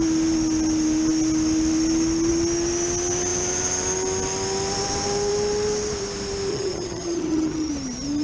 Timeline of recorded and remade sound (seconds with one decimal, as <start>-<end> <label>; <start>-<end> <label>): 0.0-6.5 recorded; 6.5-7.7 remade; 7.7-8.2 recorded